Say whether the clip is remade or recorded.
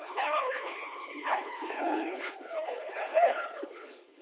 remade